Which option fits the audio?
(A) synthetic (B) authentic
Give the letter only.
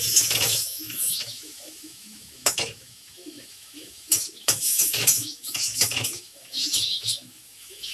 A